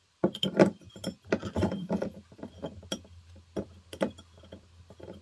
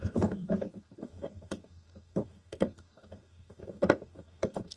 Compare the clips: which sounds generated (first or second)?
second